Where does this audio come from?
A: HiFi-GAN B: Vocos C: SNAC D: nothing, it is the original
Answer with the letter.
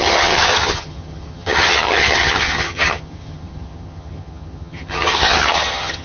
A